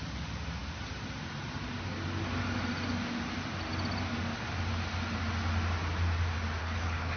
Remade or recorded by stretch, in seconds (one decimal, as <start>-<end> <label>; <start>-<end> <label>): 0.0-6.6 recorded; 6.6-7.2 remade